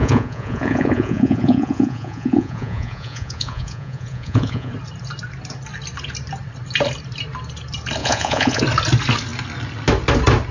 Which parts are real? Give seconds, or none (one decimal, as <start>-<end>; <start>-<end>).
4.7-8.0; 8.6-10.5